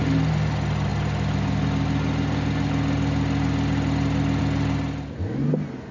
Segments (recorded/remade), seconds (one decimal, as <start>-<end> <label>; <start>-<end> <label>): 0.0-5.9 recorded